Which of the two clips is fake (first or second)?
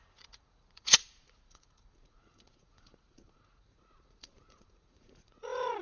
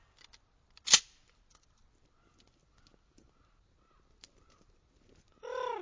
first